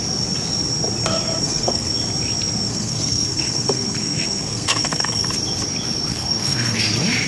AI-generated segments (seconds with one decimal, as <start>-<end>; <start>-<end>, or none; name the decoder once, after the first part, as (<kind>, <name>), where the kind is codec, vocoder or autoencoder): 1.4-1.9 (codec, SNAC); 2.7-5.3; 6.1-6.8